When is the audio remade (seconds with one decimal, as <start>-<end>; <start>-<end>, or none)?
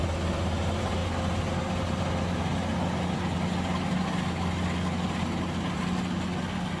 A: none